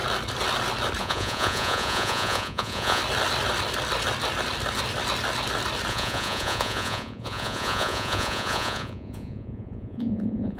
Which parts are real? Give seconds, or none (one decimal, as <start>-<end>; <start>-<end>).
0.0-1.0; 3.0-5.9